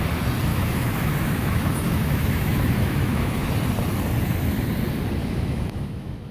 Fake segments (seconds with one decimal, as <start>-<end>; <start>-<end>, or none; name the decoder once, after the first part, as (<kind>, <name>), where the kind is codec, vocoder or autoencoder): 0.5-3.5 (autoencoder, DAC-VAE); 5.2-6.3

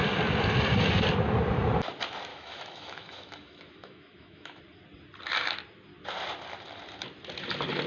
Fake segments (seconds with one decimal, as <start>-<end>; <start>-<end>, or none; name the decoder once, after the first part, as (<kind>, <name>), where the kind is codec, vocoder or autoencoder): 2.3-4.6 (autoencoder, DAC-VAE)

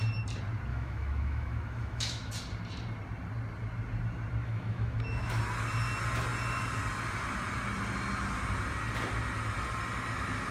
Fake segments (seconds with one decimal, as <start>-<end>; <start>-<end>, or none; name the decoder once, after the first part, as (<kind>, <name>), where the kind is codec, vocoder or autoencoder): 0.7-2.3 (autoencoder, DAC-VAE); 4.4-5.4

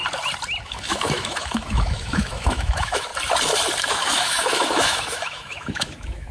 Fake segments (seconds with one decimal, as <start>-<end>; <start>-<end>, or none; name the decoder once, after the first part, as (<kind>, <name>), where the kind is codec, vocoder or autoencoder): 0.6-3.1 (autoencoder, DAC-VAE); 3.9-6.3

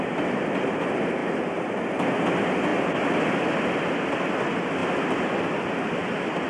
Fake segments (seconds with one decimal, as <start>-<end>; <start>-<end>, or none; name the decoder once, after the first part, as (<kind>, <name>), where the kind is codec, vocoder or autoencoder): none

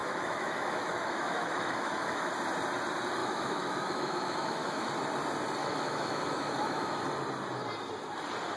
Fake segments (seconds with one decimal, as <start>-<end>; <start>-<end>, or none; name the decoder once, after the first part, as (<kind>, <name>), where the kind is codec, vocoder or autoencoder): 0.0-2.3 (autoencoder, DAC-VAE); 3.2-4.9; 5.6-7.0

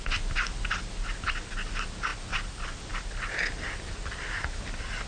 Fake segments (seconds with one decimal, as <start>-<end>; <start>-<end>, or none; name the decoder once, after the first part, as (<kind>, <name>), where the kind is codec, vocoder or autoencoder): none